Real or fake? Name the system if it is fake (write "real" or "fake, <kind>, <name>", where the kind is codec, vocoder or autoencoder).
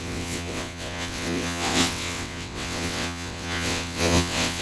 fake, vocoder, WaveNeXt